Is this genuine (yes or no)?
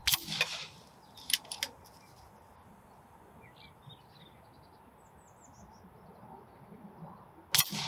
yes